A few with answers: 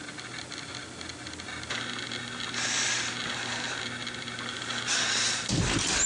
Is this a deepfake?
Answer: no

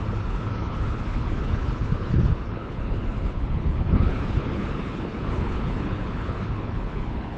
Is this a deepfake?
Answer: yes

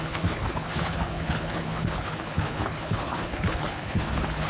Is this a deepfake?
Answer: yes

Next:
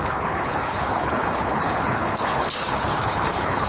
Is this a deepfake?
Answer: yes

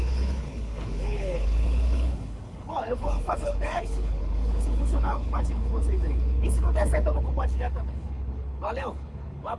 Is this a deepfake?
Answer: yes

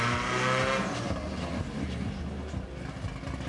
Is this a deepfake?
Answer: no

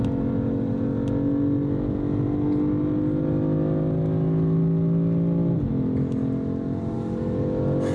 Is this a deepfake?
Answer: no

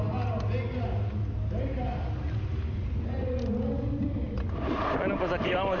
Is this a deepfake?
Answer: no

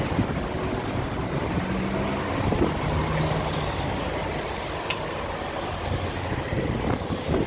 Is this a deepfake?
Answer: no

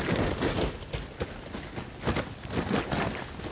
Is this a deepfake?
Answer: no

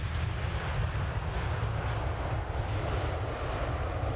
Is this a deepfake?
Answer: no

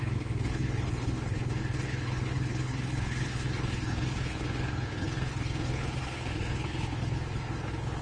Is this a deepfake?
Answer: yes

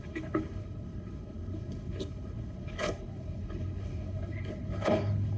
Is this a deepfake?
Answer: yes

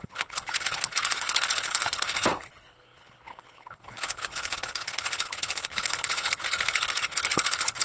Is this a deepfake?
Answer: yes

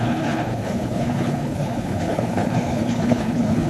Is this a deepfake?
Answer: yes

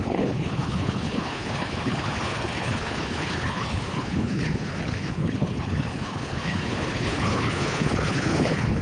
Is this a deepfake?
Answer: yes